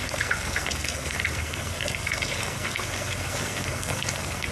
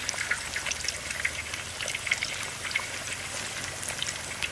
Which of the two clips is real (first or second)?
second